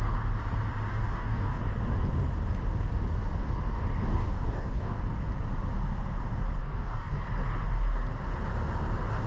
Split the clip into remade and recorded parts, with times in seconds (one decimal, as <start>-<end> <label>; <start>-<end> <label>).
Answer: 0.0-0.9 recorded; 0.9-1.6 remade; 1.6-4.1 recorded; 4.1-5.0 remade; 5.0-6.6 recorded; 6.6-7.2 remade; 7.2-9.3 recorded